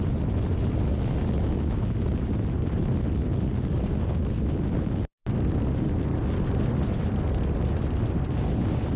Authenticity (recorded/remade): recorded